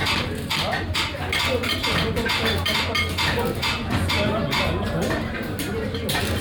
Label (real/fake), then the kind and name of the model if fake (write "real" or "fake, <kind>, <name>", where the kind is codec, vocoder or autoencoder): real